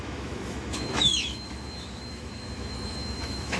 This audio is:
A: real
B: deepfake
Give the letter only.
B